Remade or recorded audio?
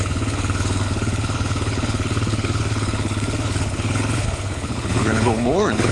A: remade